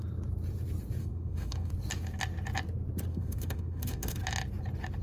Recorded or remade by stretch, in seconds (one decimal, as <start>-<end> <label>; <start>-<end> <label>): 0.0-1.0 recorded; 1.0-1.7 remade; 1.7-3.1 recorded; 3.1-4.2 remade; 4.2-5.0 recorded